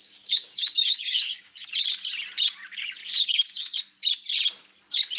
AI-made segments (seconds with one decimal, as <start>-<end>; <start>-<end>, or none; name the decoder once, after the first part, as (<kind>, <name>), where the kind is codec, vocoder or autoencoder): 0.0-1.7 (codec, DAC); 3.0-3.8